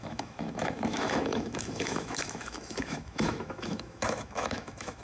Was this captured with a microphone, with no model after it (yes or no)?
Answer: no